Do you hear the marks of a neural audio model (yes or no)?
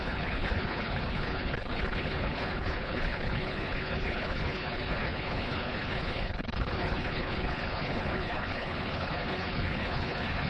yes